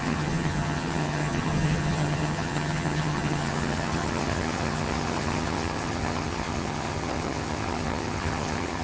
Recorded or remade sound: remade